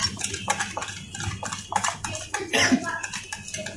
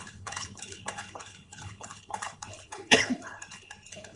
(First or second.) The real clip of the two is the first